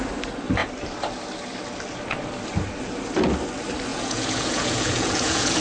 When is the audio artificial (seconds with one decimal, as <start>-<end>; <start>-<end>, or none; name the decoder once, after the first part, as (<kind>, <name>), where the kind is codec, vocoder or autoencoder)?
3.9-5.6 (vocoder, Vocos)